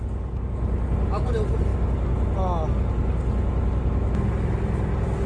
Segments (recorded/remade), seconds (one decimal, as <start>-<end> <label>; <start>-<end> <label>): 0.0-5.3 recorded